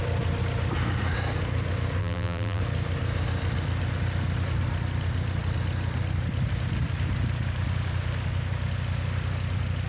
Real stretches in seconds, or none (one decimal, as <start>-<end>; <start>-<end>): 0.0-2.0; 2.6-9.9